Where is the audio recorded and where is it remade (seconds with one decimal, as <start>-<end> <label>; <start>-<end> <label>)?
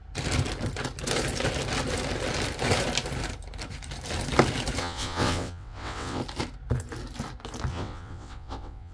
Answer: 0.0-4.8 recorded; 4.8-6.2 remade; 6.2-7.7 recorded; 7.7-8.9 remade